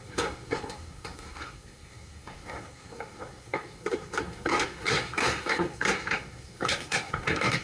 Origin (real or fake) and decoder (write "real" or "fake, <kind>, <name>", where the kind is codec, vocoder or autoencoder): fake, codec, SNAC